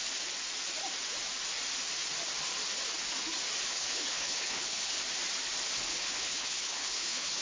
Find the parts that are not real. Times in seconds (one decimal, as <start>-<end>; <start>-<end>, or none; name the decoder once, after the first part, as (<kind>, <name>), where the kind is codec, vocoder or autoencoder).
3.7-5.0 (codec, HILCodec); 5.9-7.4